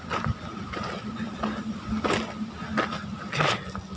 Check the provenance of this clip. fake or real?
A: real